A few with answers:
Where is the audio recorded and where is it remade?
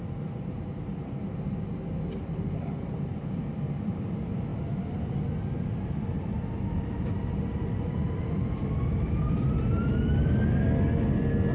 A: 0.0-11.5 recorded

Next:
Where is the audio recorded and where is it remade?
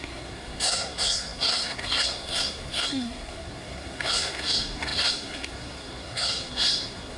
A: 0.0-7.2 remade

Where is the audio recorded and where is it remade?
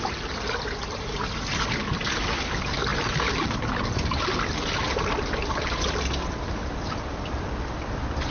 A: 0.0-8.3 recorded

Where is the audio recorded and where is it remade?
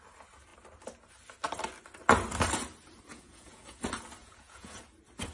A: 0.0-3.1 recorded; 3.1-3.8 remade; 3.8-4.2 recorded; 4.2-4.8 remade; 4.8-5.3 recorded